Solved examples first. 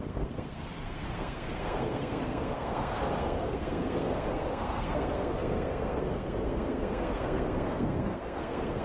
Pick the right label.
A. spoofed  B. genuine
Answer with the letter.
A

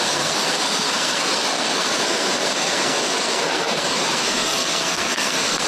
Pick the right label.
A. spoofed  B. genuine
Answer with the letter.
A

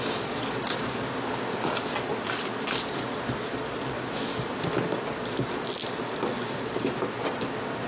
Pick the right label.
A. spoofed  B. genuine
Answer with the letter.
B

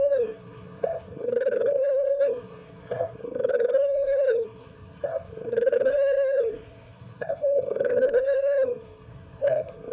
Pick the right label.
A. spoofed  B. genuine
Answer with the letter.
A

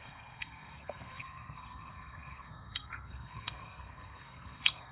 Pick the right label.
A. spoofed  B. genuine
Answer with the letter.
A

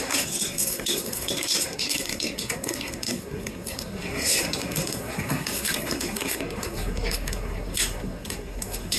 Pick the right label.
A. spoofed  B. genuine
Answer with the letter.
A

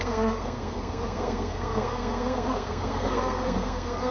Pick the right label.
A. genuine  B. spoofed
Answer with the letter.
B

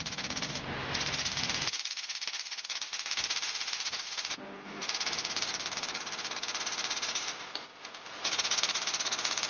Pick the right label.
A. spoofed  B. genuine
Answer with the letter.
B